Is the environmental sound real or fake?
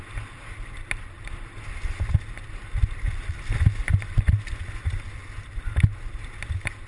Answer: real